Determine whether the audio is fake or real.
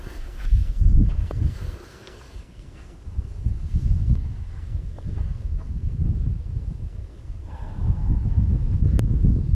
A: fake